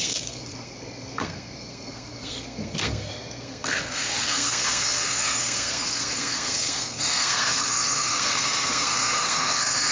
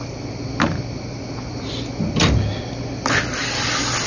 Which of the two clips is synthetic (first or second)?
first